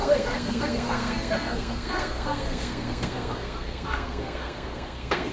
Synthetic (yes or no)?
yes